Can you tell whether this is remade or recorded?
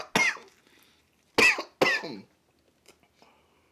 recorded